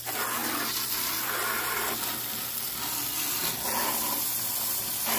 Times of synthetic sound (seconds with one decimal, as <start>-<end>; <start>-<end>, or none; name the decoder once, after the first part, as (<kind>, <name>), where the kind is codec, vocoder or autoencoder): none